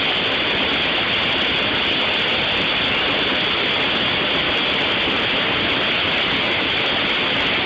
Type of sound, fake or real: real